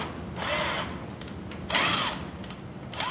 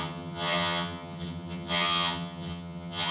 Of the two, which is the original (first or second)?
first